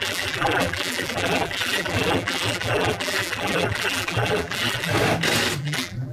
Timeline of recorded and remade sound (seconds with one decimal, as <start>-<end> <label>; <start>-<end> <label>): 0.0-4.9 remade; 4.9-5.6 recorded; 5.6-6.1 remade